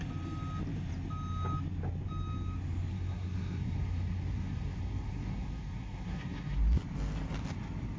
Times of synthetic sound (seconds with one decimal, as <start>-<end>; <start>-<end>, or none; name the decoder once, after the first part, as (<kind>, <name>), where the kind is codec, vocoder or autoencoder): 2.9-6.6 (codec, SNAC)